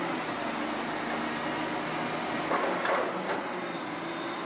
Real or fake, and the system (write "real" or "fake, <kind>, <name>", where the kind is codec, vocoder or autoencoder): real